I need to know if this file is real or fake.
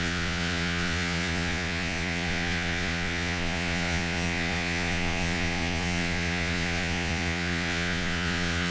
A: fake